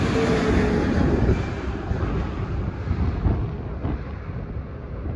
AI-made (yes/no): no